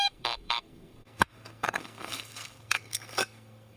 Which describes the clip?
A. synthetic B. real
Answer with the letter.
A